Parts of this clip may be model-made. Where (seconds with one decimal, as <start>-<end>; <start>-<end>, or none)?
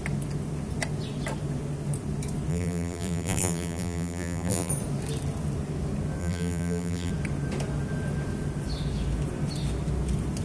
2.5-4.7; 6.2-7.1